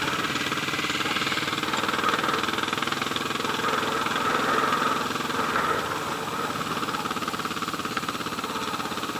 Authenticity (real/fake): real